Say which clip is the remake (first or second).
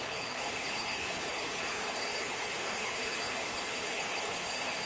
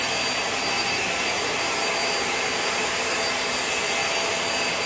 first